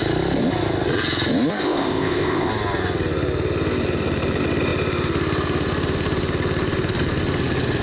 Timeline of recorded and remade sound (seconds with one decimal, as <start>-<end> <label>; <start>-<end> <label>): 0.0-1.5 recorded; 1.5-2.5 remade; 2.5-7.8 recorded